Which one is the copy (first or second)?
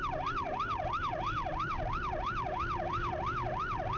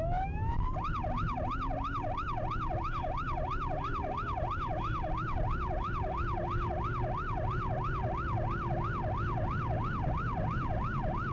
first